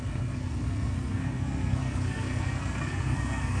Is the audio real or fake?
fake